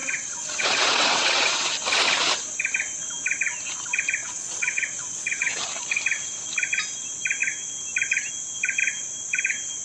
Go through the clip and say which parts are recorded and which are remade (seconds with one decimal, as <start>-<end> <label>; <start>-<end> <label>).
0.0-1.7 remade; 1.7-4.2 recorded; 4.2-5.6 remade; 5.6-9.8 recorded